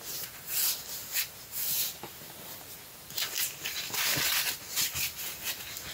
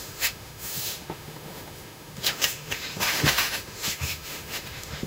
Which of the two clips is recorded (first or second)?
first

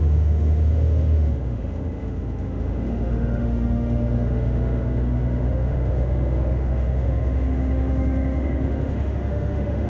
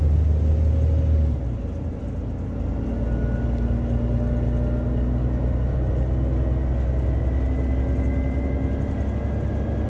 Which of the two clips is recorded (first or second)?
second